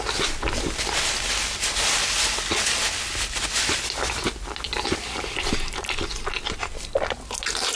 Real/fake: real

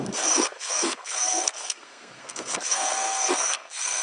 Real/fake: fake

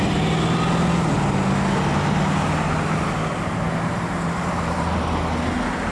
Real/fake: real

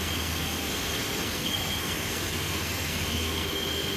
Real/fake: fake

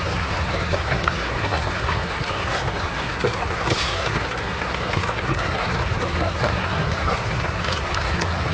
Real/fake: fake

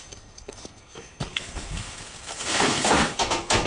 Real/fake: fake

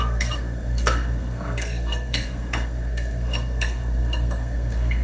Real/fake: fake